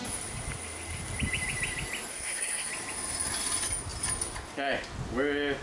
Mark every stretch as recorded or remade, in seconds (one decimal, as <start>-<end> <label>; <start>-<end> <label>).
0.0-2.1 recorded; 2.1-2.7 remade; 2.7-5.6 recorded